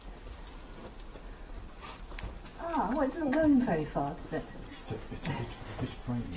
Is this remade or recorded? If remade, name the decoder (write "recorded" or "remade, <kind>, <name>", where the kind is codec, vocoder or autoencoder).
recorded